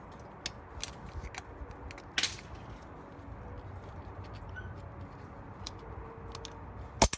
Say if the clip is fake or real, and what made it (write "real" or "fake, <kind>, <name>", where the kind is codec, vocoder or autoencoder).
real